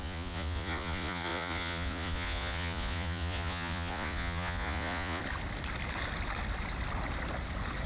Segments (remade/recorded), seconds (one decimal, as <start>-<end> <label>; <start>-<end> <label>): 0.0-5.2 remade; 5.2-7.9 recorded